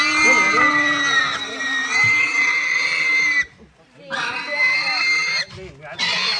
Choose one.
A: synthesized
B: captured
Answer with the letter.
B